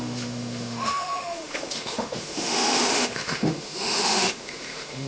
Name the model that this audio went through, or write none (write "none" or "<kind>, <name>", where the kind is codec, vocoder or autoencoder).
autoencoder, DAC-VAE